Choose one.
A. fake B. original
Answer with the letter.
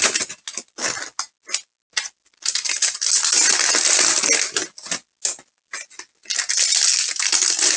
B